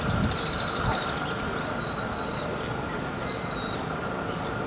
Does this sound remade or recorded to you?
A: recorded